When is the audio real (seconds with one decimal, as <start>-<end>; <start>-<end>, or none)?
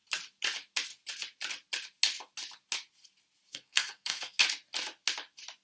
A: 0.0-3.5; 4.4-5.6